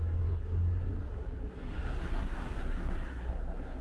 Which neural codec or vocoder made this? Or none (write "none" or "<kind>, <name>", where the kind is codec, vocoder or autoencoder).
codec, SNAC